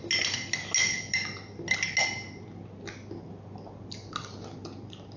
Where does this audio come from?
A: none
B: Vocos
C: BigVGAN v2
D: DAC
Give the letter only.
A